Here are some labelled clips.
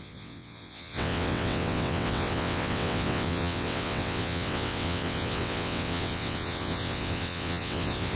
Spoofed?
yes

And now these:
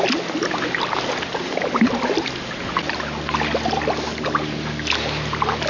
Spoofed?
no